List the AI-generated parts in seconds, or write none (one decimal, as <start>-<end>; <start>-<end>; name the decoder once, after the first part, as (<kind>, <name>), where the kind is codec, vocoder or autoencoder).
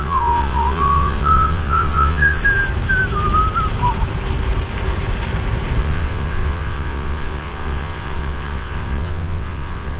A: 0.0-2.4 (vocoder, WaveNeXt); 5.8-10.0